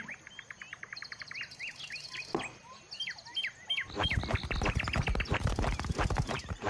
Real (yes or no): yes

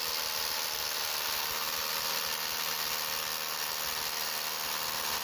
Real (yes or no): yes